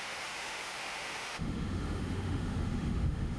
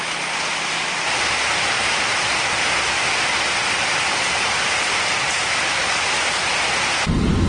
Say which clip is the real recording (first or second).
second